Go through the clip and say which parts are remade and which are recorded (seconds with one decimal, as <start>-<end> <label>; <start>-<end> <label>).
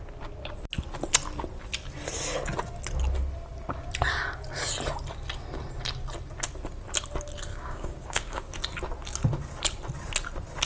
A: 0.0-7.5 recorded; 7.5-8.5 remade; 8.5-10.7 recorded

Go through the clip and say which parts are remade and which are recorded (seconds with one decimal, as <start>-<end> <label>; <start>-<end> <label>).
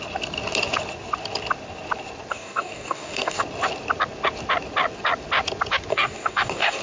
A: 0.0-2.3 recorded; 2.3-3.4 remade; 3.4-5.9 recorded; 5.9-6.8 remade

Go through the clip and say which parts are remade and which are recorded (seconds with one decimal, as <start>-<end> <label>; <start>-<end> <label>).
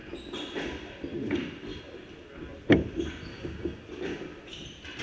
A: 0.0-3.3 recorded; 3.3-3.8 remade; 3.8-5.0 recorded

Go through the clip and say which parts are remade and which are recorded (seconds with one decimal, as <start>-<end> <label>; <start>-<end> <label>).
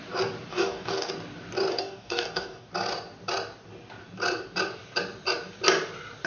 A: 0.0-0.5 recorded; 0.5-1.1 remade; 1.1-1.7 recorded; 1.7-2.7 remade; 2.7-6.3 recorded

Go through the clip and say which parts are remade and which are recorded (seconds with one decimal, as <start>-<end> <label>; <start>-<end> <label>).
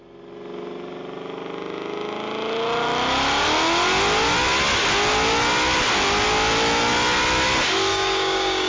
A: 0.0-7.9 recorded; 7.9-8.7 remade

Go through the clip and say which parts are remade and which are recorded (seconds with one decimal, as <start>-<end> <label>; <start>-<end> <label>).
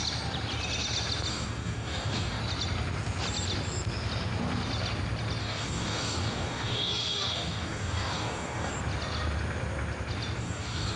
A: 0.0-1.3 recorded; 1.3-2.4 remade; 2.4-5.4 recorded; 5.4-8.7 remade; 8.7-10.4 recorded; 10.4-11.0 remade